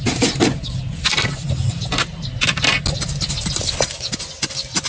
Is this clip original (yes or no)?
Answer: yes